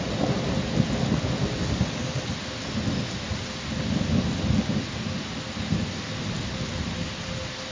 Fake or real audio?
real